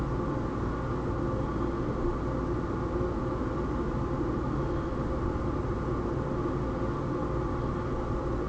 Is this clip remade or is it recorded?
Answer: recorded